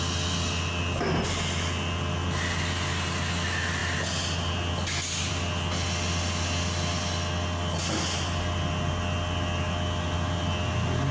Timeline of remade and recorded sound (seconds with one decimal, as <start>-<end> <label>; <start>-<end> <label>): 0.0-11.1 recorded